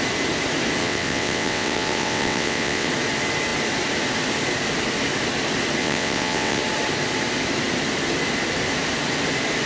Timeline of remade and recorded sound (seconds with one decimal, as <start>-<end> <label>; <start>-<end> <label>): 0.0-0.8 recorded; 0.8-2.9 remade; 2.9-5.8 recorded; 5.8-6.6 remade; 6.6-9.7 recorded